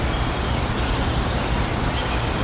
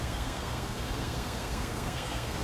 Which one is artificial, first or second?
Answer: second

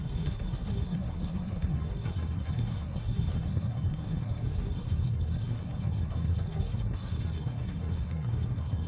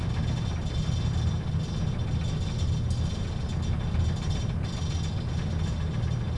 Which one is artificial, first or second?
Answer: first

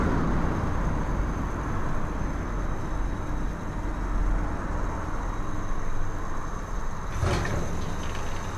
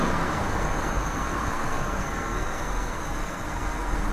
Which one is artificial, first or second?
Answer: second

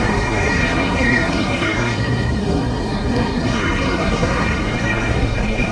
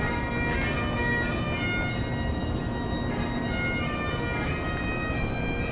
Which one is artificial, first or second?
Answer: first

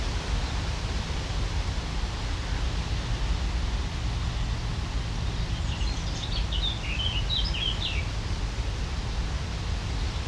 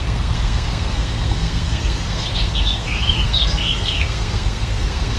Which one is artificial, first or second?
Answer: second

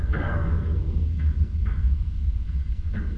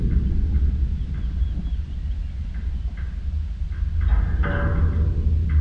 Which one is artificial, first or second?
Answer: first